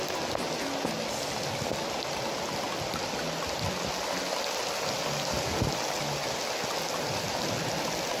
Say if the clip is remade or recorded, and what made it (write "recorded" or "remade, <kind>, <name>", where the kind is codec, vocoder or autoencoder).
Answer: recorded